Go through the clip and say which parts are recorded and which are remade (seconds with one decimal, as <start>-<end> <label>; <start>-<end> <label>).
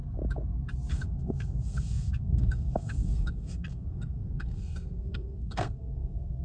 0.0-0.9 recorded; 0.9-6.4 remade